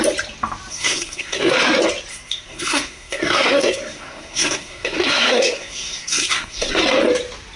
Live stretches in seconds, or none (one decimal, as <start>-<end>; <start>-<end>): 0.0-0.7; 1.5-2.1; 6.7-7.6